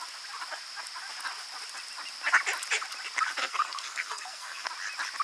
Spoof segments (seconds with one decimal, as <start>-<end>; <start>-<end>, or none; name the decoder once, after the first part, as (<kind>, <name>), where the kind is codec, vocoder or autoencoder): 3.4-4.7 (codec, SNAC)